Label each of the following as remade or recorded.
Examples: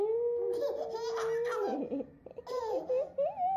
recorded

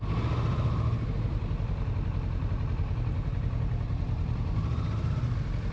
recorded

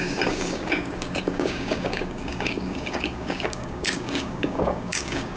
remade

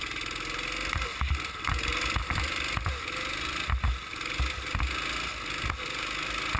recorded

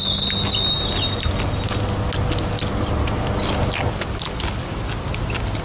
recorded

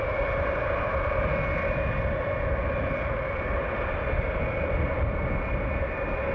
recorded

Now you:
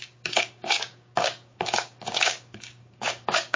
remade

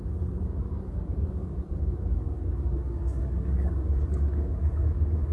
remade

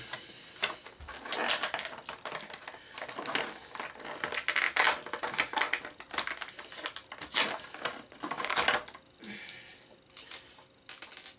recorded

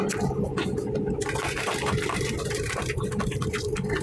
recorded